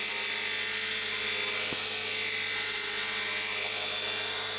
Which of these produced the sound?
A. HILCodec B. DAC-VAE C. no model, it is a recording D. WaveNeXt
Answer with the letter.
C